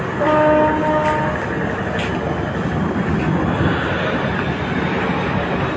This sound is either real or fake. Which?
real